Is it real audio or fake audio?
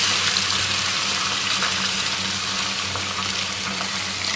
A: fake